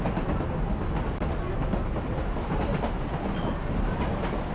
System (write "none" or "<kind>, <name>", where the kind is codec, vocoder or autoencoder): none